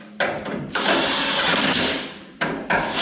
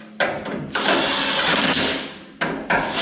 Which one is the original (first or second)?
second